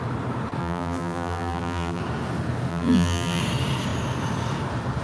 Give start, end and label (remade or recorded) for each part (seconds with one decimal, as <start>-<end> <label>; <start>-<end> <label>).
0.0-0.6 recorded; 0.6-2.0 remade; 2.0-2.7 recorded; 2.7-3.4 remade; 3.4-5.0 recorded